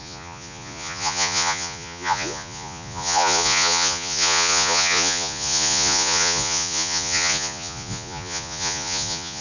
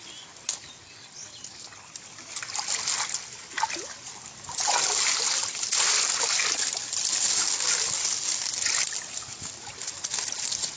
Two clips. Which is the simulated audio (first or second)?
first